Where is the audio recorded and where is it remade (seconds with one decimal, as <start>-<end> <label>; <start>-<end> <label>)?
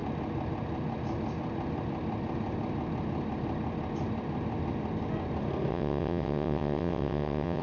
0.0-5.7 recorded; 5.7-7.6 remade